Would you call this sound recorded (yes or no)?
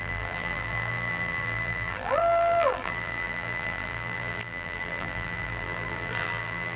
no